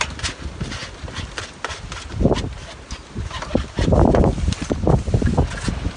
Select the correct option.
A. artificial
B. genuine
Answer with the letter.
B